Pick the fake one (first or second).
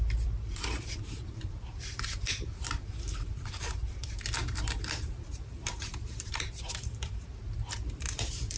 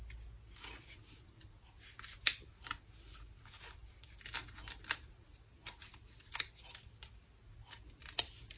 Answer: first